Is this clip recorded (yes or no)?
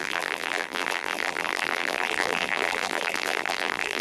no